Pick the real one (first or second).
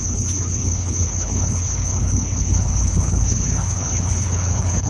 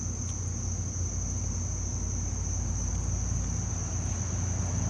second